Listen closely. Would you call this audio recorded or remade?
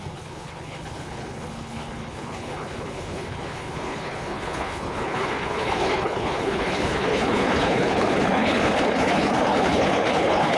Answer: remade